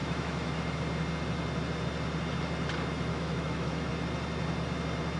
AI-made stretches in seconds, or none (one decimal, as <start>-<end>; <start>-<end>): 0.0-0.8; 3.1-3.9